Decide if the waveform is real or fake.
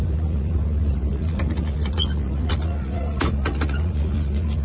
fake